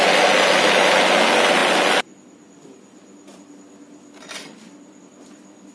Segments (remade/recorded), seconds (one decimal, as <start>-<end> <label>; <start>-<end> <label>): 0.0-5.7 recorded